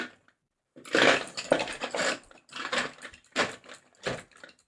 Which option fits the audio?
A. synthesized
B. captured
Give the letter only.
B